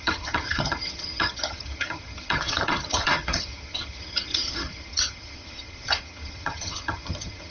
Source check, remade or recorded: remade